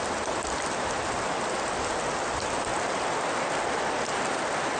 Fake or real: real